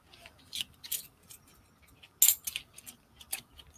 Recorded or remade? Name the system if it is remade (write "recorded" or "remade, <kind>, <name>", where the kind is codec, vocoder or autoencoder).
recorded